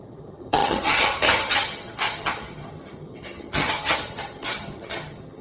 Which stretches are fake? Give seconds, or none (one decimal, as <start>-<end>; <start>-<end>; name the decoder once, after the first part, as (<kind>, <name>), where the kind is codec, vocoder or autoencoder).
0.0-5.4 (vocoder, HiFi-GAN)